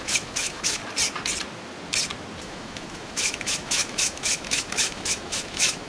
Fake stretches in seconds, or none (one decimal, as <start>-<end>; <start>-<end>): 0.0-0.8; 2.4-5.9